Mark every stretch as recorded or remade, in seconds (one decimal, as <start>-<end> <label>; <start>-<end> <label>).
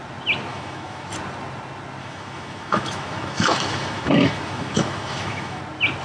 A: 0.0-0.5 recorded; 0.5-1.1 remade; 1.1-2.0 recorded; 2.0-5.6 remade; 5.6-6.0 recorded